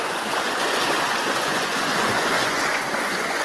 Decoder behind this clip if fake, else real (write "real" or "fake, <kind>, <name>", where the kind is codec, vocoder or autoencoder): fake, vocoder, Vocos